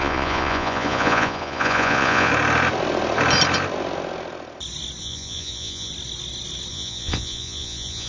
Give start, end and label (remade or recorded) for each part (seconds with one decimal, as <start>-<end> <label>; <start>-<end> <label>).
0.0-2.3 remade; 2.3-5.0 recorded; 5.0-5.9 remade; 5.9-6.7 recorded; 6.7-8.1 remade